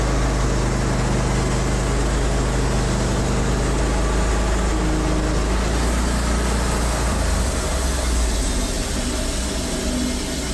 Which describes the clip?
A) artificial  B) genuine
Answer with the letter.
B